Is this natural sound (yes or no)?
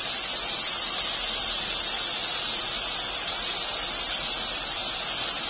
yes